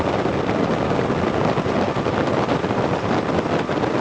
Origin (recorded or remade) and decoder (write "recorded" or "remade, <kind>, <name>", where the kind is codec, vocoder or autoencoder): recorded